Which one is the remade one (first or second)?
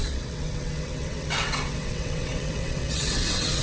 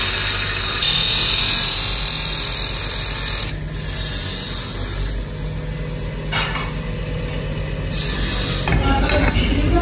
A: first